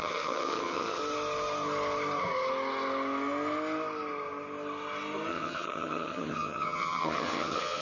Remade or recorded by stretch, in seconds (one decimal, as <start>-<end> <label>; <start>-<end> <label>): 0.0-1.0 remade; 1.0-5.3 recorded; 5.3-7.8 remade